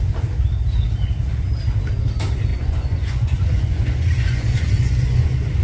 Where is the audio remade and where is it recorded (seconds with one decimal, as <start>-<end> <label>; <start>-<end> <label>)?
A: 0.0-2.5 recorded; 2.5-5.6 remade